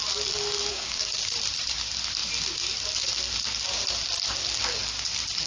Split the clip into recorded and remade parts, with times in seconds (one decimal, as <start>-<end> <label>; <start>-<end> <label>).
0.0-0.7 recorded; 0.7-1.3 remade; 1.3-5.5 recorded